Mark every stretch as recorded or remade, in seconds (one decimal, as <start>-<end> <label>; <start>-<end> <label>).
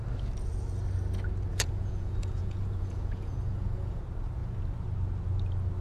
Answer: 0.0-1.5 recorded; 1.5-4.0 remade; 4.0-5.8 recorded